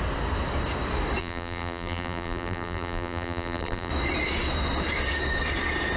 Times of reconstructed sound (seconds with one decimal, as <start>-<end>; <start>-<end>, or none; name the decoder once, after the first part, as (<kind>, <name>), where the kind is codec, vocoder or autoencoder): 1.2-3.9 (vocoder, BigVGAN v2)